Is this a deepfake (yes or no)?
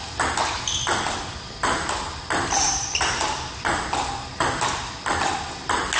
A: no